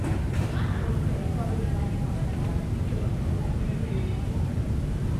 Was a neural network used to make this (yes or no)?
no